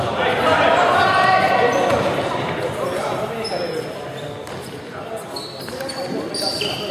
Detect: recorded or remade recorded